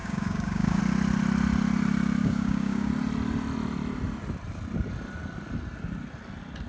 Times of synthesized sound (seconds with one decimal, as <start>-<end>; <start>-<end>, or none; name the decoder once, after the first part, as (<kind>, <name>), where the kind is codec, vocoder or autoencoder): 0.0-0.8 (codec, DAC); 2.2-2.9